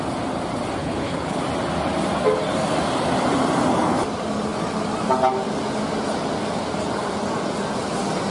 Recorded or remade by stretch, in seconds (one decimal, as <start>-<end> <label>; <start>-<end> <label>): 0.0-0.8 recorded; 0.8-1.4 remade; 1.4-8.3 recorded